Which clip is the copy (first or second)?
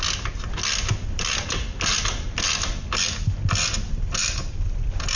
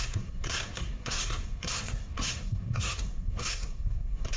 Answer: second